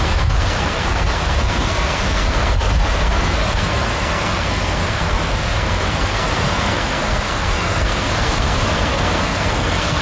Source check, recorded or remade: remade